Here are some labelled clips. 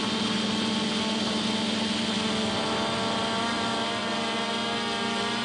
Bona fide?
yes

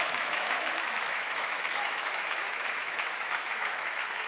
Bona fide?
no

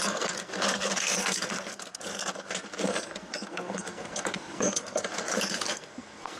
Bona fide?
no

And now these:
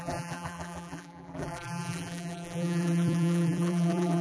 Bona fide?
no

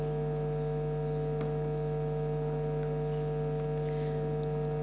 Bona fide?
yes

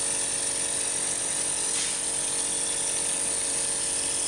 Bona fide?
yes